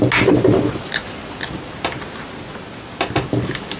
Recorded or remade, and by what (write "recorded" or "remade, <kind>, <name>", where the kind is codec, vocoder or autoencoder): recorded